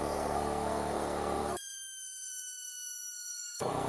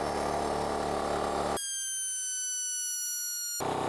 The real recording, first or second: second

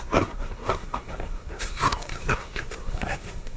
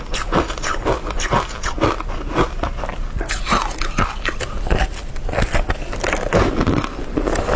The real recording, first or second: second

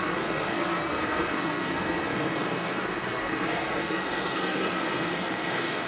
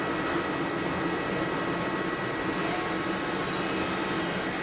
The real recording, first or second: second